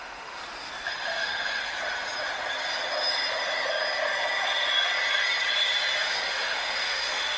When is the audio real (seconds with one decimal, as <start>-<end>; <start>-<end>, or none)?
0.4-0.9; 1.6-6.0